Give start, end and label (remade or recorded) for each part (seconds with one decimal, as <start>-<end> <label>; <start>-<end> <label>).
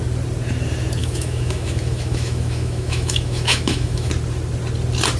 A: 0.0-1.0 recorded; 1.0-4.1 remade; 4.1-5.2 recorded